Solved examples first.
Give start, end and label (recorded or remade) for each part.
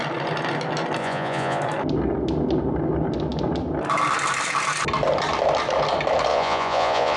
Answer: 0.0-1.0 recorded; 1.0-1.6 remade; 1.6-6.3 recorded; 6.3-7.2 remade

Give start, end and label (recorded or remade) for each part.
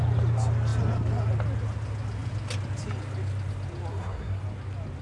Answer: 0.0-3.9 recorded; 3.9-4.4 remade; 4.4-5.0 recorded